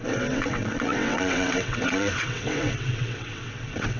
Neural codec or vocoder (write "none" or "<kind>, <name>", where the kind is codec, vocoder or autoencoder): vocoder, WaveNeXt